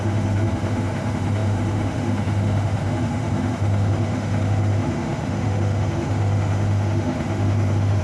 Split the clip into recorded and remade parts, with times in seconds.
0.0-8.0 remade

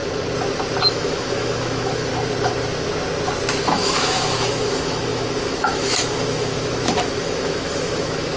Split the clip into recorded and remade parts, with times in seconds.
0.0-0.9 recorded; 0.9-2.1 remade; 2.1-3.6 recorded; 3.6-8.4 remade

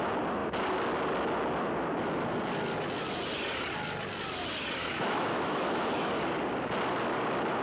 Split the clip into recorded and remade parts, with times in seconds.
0.0-4.8 recorded; 4.8-6.1 remade; 6.1-7.6 recorded

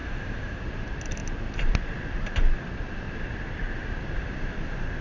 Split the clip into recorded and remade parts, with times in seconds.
0.0-0.6 remade; 0.6-5.0 recorded